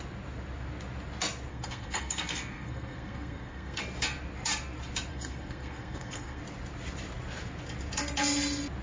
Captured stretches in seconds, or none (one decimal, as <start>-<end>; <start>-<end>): 0.0-1.5; 3.8-5.1; 6.4-8.8